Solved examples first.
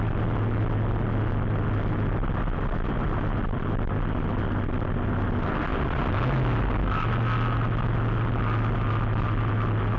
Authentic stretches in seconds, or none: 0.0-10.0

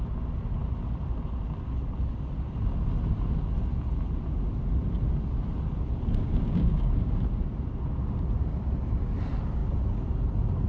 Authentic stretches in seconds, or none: 0.0-6.2; 7.1-10.7

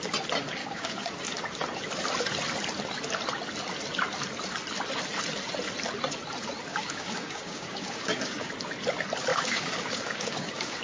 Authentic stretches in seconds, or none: 0.0-0.6; 1.1-6.7; 8.5-9.3

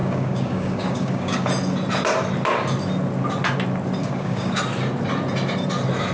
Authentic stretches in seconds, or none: 1.5-4.0; 4.6-6.1

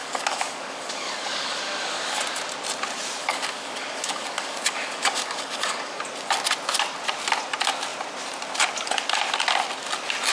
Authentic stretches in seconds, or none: 2.2-3.2; 6.0-10.3